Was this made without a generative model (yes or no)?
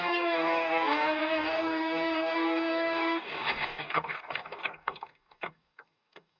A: no